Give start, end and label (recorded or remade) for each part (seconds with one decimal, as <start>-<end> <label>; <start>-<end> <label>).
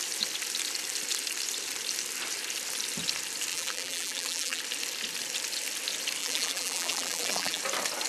0.0-3.5 recorded; 3.5-4.6 remade; 4.6-6.2 recorded; 6.2-7.6 remade; 7.6-8.1 recorded